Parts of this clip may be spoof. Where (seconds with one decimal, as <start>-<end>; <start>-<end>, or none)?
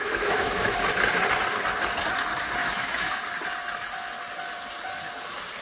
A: 0.0-0.8; 2.6-3.2